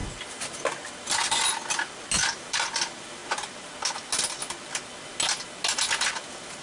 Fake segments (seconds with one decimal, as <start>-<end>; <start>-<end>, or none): 2.0-3.2; 5.9-6.6